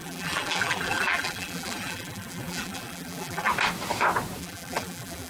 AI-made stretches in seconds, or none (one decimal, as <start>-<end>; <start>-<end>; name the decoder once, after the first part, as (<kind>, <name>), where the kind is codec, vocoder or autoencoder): 0.0-3.5 (vocoder, BigVGAN v2); 4.4-5.3